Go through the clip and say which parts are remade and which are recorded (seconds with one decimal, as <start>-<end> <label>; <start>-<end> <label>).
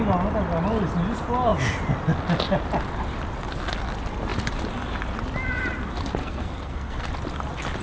0.0-6.2 recorded; 6.2-7.1 remade; 7.1-7.8 recorded